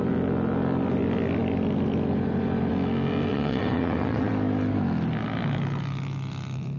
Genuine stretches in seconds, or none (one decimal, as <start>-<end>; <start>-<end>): 0.0-3.3; 4.3-6.8